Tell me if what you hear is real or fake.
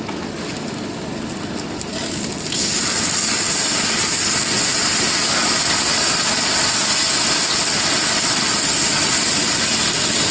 real